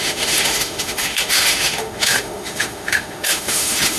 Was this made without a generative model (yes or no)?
no